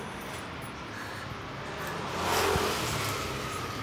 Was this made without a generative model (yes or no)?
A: yes